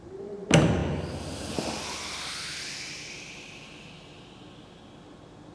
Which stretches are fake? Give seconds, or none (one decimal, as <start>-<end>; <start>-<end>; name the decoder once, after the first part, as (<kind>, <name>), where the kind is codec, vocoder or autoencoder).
none